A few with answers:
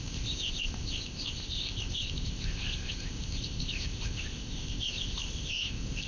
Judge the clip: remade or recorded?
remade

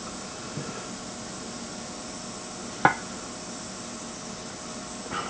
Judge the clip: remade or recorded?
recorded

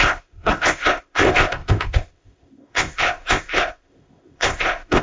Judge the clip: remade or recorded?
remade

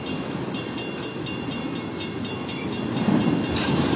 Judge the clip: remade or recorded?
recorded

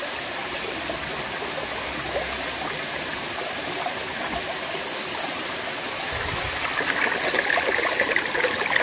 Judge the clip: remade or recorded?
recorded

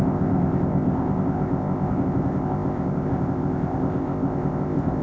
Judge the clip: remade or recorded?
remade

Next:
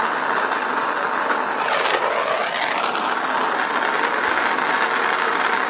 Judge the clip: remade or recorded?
recorded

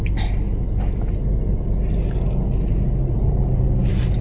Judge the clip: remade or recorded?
recorded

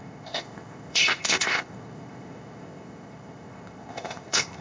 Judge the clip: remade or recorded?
remade